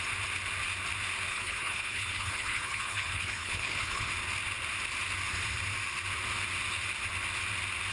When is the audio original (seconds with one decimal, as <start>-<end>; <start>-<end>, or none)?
0.0-1.3; 4.1-7.9